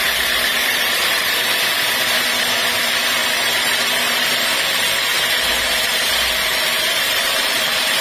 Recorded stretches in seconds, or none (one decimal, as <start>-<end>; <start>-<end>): 0.0-0.5; 1.4-3.2